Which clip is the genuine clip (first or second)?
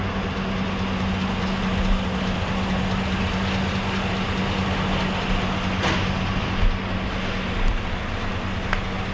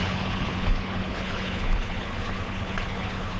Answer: first